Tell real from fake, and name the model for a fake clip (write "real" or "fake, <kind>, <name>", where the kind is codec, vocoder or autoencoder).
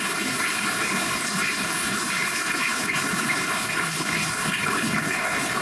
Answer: fake, codec, HILCodec